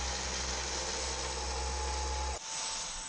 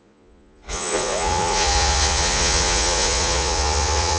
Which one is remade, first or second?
second